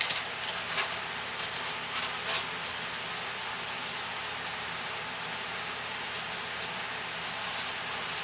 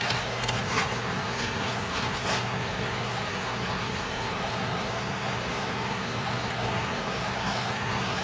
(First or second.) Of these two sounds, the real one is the first